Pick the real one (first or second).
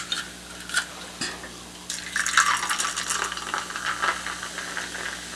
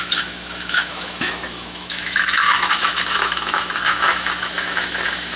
first